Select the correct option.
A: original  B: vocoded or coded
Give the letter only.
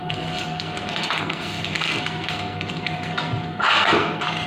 B